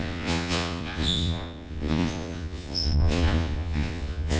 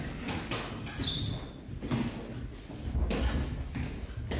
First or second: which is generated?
first